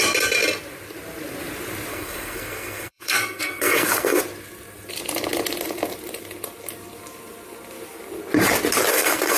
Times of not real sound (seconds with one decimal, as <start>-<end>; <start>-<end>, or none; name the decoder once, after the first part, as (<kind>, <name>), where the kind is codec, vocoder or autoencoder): 1.9-4.2 (codec, SNAC); 8.9-9.4